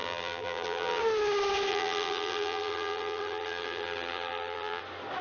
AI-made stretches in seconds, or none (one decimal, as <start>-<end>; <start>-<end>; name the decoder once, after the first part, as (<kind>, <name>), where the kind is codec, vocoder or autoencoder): 0.0-1.0 (vocoder, BigVGAN v2); 1.7-4.8